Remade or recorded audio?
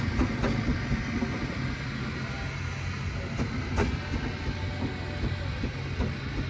recorded